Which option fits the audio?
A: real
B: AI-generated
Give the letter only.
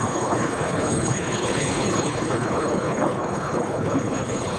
B